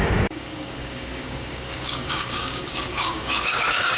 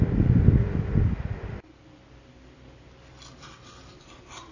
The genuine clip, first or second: second